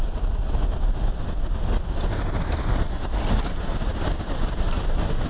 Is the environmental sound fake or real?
real